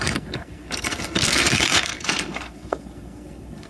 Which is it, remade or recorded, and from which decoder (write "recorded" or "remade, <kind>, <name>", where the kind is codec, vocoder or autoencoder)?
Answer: remade, codec, SNAC